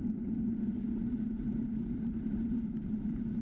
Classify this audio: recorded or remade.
remade